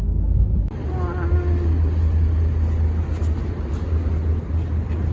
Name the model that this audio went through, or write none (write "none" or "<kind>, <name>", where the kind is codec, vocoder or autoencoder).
none